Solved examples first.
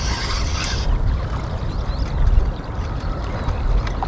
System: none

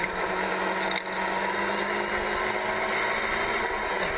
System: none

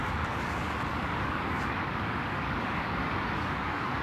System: codec, DAC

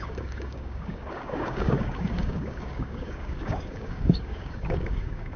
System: codec, DAC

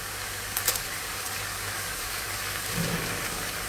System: codec, DAC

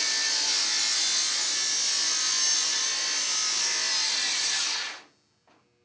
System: none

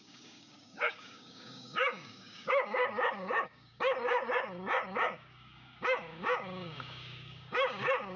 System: codec, DAC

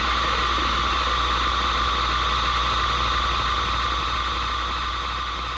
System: none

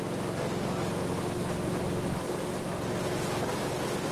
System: none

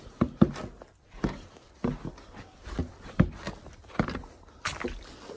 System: none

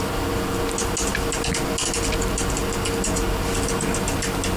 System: none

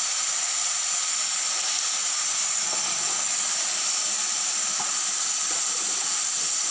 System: none